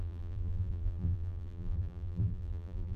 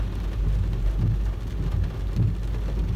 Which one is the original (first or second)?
second